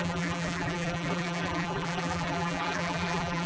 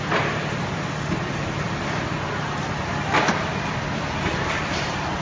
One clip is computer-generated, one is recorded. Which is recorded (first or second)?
second